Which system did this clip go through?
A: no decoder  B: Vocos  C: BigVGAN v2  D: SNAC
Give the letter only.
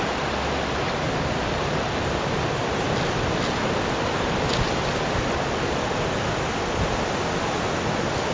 A